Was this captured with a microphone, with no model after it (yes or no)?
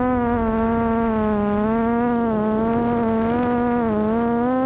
yes